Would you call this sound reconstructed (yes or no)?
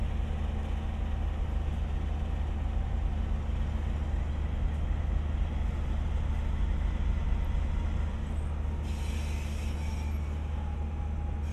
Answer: no